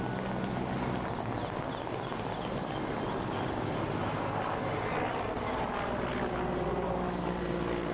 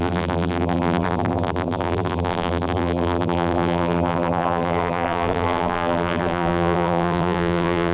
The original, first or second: first